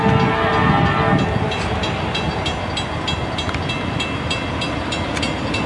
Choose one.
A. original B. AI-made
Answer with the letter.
A